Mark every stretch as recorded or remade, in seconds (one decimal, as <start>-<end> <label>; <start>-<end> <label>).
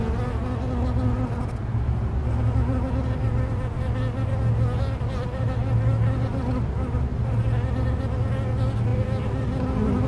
0.0-10.1 recorded